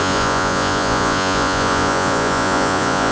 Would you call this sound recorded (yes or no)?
no